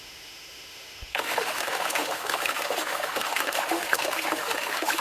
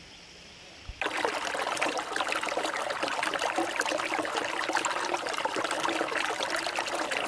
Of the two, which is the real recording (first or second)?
second